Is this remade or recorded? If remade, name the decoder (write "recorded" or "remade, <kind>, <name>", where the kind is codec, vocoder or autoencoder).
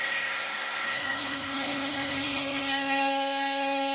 remade, codec, SNAC